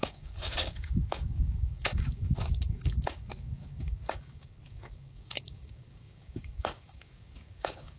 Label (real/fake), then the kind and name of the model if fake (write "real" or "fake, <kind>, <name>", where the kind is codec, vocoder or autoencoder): fake, codec, DAC